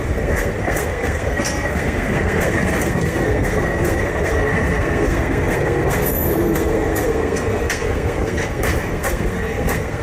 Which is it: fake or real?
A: fake